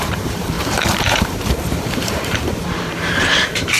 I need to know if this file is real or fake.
fake